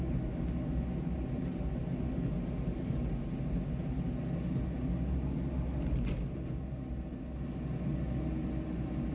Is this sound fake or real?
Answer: real